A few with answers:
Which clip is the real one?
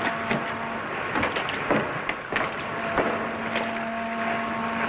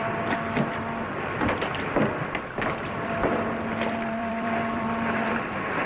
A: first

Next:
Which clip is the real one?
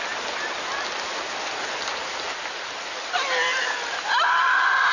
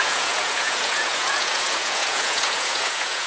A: first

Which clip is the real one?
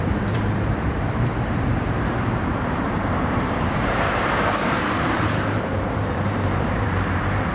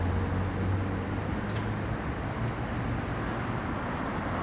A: second